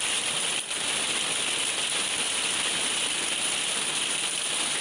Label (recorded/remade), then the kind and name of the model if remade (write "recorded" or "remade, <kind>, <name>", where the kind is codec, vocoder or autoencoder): recorded